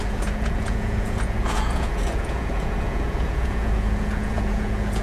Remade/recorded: remade